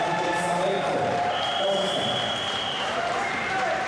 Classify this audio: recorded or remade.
remade